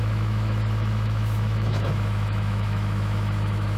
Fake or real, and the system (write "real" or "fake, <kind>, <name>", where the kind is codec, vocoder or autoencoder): fake, autoencoder, DAC-VAE